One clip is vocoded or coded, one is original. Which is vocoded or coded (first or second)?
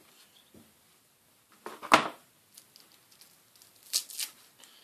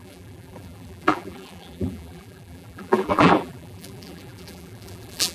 second